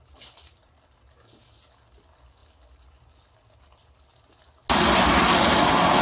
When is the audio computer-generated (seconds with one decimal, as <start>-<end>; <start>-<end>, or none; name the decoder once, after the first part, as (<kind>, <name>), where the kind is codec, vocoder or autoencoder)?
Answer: none